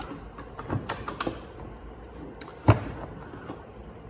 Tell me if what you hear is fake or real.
real